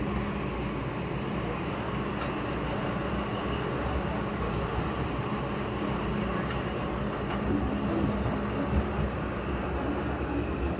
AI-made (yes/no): no